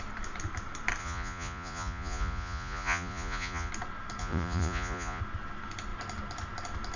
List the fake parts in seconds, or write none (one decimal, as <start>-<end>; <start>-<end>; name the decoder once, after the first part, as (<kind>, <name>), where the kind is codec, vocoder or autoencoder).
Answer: 1.0-3.7 (vocoder, Vocos); 4.2-5.2